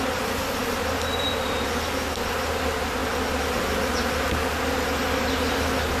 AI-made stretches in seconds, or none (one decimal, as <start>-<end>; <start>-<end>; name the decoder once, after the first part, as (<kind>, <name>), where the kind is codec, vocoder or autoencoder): 0.6-1.6 (vocoder, BigVGAN v2)